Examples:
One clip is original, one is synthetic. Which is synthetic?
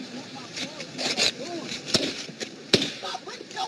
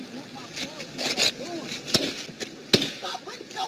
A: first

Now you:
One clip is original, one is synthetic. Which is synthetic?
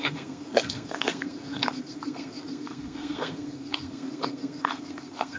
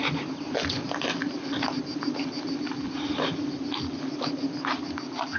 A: first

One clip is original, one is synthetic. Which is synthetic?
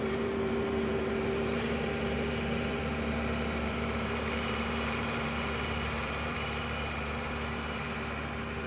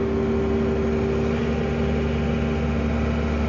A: first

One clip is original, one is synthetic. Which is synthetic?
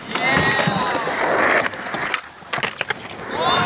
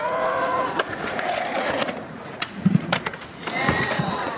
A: second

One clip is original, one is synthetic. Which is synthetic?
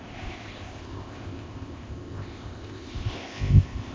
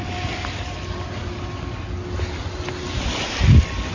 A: first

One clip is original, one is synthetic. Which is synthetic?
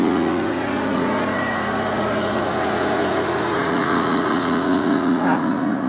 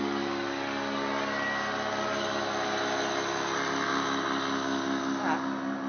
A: first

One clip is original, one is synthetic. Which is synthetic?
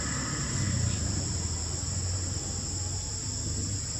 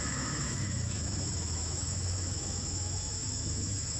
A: second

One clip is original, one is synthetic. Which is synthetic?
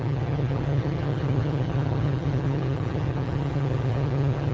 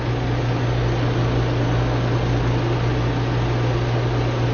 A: first